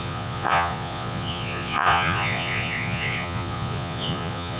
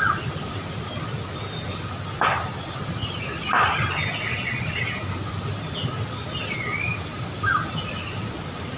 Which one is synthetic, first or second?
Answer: first